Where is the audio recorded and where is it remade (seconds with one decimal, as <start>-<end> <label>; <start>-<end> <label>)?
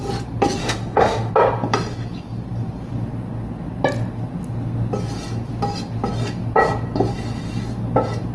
0.0-0.6 recorded; 0.6-1.3 remade; 1.3-8.3 recorded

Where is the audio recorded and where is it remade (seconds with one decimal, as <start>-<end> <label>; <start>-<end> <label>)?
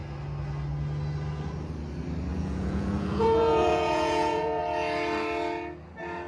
0.0-2.3 recorded; 2.3-4.6 remade; 4.6-6.3 recorded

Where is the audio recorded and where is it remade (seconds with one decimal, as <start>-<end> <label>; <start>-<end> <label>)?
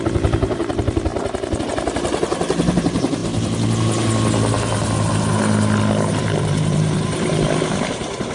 0.0-1.1 remade; 1.1-1.6 recorded; 1.6-3.2 remade; 3.2-6.1 recorded; 6.1-8.3 remade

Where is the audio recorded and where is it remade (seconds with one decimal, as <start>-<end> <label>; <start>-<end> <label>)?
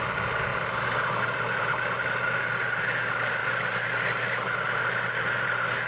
0.0-5.9 recorded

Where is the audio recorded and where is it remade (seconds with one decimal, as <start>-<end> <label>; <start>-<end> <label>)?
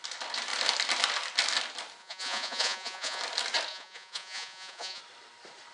0.0-2.0 recorded; 2.0-3.2 remade; 3.2-3.7 recorded; 3.7-5.0 remade; 5.0-5.7 recorded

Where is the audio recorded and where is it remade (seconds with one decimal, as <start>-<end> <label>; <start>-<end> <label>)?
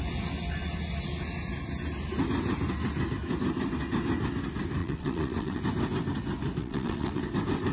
0.0-4.8 recorded; 4.8-5.6 remade; 5.6-6.6 recorded; 6.6-7.2 remade; 7.2-7.7 recorded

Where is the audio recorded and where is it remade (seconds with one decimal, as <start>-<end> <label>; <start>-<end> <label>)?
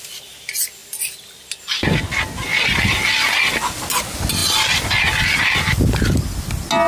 0.0-6.9 recorded